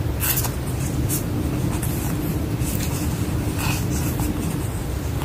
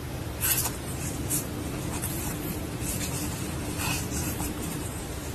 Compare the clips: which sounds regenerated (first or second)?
second